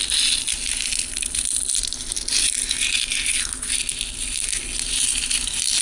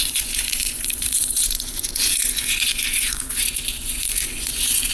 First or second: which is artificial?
second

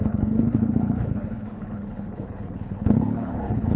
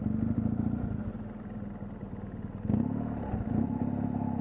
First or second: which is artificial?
first